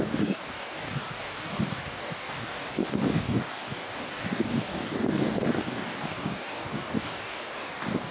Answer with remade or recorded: remade